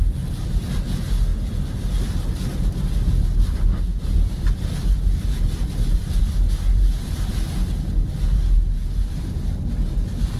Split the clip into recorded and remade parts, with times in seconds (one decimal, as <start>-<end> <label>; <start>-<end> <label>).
0.0-3.9 recorded; 3.9-7.3 remade; 7.3-10.4 recorded